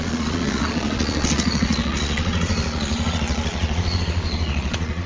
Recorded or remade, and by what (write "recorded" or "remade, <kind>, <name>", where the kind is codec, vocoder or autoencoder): remade, vocoder, Vocos